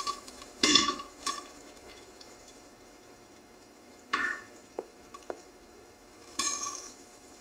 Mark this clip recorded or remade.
remade